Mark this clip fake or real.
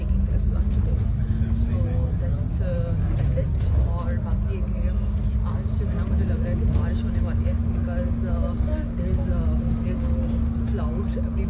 real